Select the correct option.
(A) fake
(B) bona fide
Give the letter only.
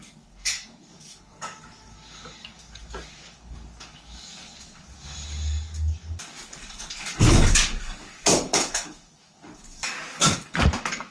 A